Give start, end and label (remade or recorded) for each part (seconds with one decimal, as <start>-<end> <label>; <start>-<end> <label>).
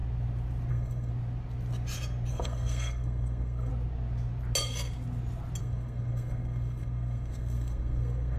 0.0-0.7 recorded; 0.7-1.1 remade; 1.1-2.3 recorded; 2.3-3.7 remade; 3.7-5.6 recorded; 5.6-8.4 remade